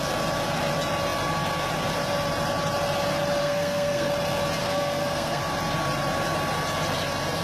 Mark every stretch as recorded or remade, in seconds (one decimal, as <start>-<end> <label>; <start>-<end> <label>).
0.0-3.4 recorded; 3.4-4.1 remade; 4.1-4.6 recorded; 4.6-5.4 remade; 5.4-7.4 recorded